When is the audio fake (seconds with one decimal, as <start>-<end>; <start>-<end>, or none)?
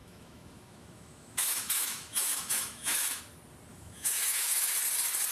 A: 0.0-3.2; 3.7-4.7